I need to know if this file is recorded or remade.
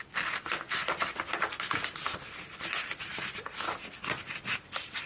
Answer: recorded